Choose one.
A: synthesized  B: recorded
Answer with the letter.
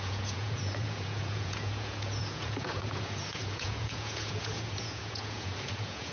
A